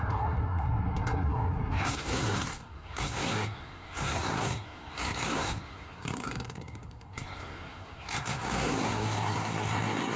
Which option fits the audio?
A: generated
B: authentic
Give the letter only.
A